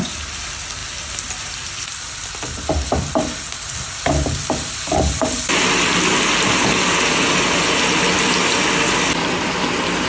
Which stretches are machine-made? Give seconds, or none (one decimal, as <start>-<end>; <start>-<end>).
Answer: none